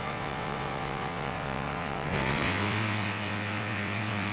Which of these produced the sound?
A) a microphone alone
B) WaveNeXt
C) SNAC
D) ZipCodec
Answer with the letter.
B